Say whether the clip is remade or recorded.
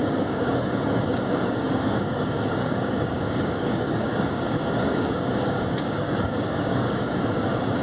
remade